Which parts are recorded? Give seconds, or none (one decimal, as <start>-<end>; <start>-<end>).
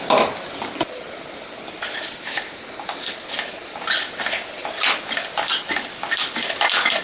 0.0-7.0